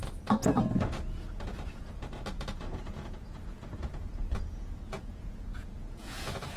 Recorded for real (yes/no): no